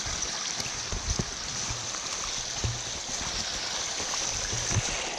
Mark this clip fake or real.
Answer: real